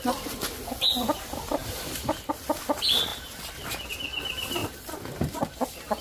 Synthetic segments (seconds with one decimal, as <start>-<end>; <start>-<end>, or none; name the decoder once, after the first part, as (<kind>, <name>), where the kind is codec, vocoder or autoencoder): none